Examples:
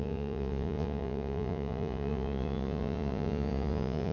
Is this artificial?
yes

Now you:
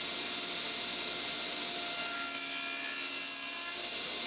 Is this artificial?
no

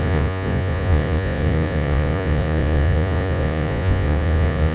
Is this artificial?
yes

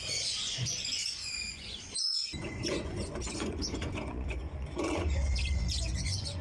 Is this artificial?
yes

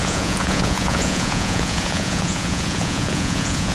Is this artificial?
yes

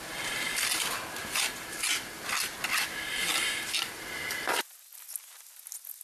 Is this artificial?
no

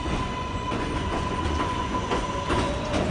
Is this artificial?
yes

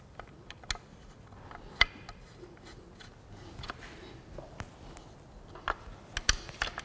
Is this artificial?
no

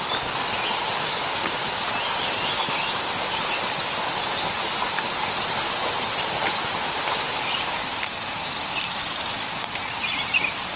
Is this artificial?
no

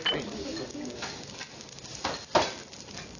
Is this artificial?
no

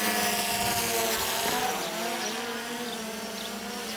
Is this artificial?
no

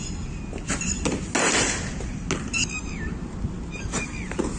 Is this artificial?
no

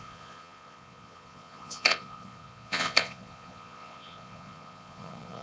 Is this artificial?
yes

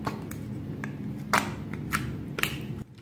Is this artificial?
no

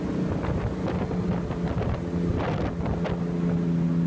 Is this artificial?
no